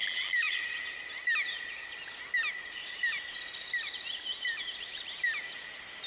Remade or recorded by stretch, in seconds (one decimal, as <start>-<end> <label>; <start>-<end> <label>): 0.0-0.6 remade; 0.6-6.1 recorded